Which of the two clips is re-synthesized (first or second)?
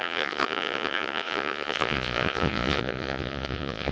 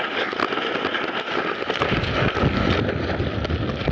first